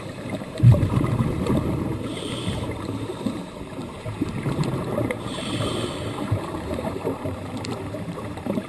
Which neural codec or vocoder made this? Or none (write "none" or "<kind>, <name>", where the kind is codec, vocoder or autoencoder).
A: vocoder, BigVGAN v2